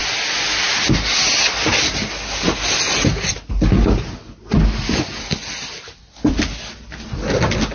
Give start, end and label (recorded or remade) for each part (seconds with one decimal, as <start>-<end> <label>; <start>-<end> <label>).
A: 0.0-7.7 recorded